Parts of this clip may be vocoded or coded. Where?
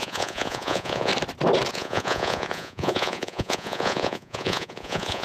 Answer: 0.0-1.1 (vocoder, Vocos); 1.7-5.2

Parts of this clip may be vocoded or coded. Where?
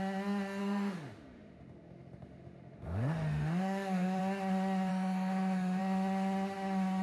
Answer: 0.6-4.2 (autoencoder, DAC-VAE); 4.9-5.8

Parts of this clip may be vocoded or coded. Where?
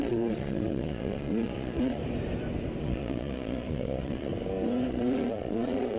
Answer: 0.0-2.0 (vocoder, Vocos); 2.8-4.3; 4.9-6.0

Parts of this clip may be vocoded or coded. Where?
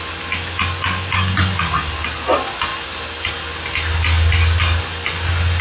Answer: none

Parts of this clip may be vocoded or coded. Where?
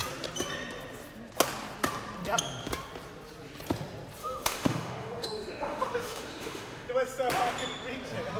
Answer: 4.2-6.9 (autoencoder, DAC-VAE)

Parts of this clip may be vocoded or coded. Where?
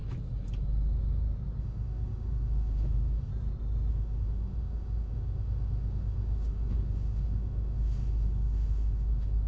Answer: 1.6-3.3 (autoencoder, DAC-VAE); 3.9-9.5